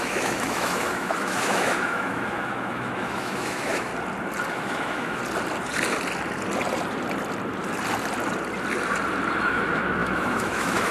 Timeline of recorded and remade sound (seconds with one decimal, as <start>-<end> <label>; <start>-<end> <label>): 0.0-3.9 remade; 3.9-4.5 recorded; 4.5-5.2 remade; 5.2-9.4 recorded; 9.4-10.9 remade